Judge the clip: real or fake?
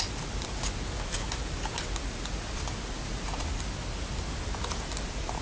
real